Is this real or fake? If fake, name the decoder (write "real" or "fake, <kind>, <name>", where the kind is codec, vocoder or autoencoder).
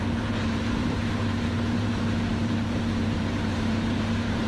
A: fake, vocoder, BigVGAN v2